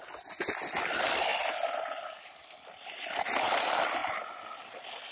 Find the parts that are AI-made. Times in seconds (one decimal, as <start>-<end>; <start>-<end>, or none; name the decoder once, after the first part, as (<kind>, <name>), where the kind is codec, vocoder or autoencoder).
none